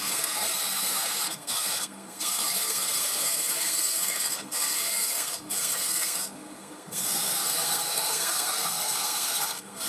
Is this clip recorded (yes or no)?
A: no